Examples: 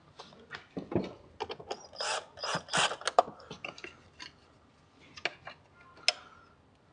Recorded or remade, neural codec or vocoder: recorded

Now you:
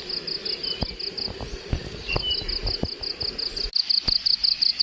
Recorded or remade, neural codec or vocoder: recorded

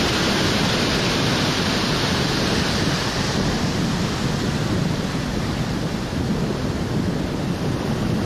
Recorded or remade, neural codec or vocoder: recorded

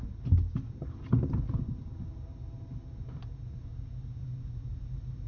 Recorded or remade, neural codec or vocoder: recorded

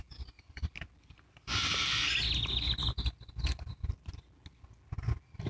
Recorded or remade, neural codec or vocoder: recorded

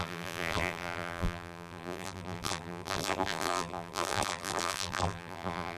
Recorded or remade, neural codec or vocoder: remade, vocoder, BigVGAN v2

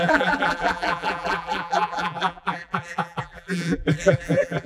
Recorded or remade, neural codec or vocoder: remade, vocoder, BigVGAN v2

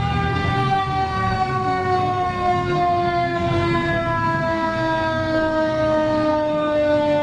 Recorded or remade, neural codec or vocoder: remade, codec, SNAC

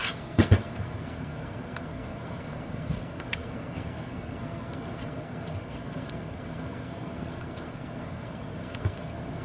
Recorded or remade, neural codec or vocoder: remade, codec, SNAC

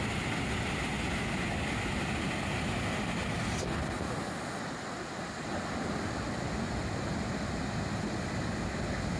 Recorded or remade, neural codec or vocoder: recorded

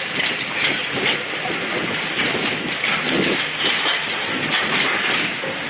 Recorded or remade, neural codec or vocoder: remade, vocoder, BigVGAN v2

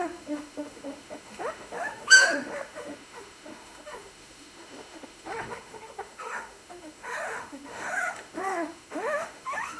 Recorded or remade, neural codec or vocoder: remade, autoencoder, DAC-VAE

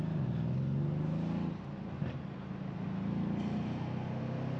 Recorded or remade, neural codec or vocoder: recorded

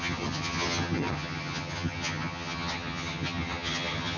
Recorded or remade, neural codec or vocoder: remade, vocoder, HiFi-GAN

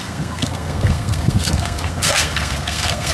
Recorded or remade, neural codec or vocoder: remade, codec, SNAC